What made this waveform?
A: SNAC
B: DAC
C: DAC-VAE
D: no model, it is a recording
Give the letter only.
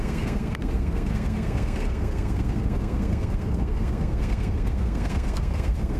A